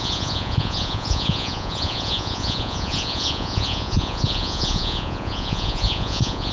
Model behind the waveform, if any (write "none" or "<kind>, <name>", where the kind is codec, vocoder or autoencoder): vocoder, Vocos